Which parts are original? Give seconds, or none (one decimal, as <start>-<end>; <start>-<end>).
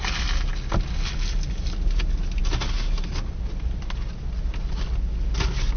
0.0-5.8